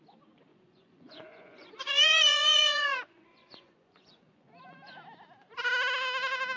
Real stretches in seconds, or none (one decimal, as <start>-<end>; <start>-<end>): 0.0-0.5; 4.5-6.6